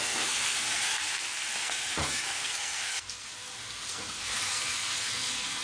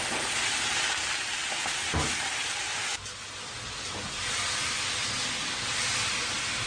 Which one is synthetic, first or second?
first